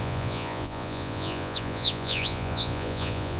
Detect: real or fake fake